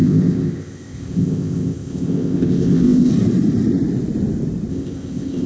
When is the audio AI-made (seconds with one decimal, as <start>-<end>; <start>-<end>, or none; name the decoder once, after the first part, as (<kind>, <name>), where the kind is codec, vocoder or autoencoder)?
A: 0.0-3.1 (codec, ZipCodec); 4.7-5.5